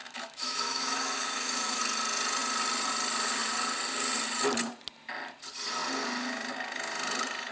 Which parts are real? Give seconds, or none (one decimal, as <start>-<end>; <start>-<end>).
1.8-7.5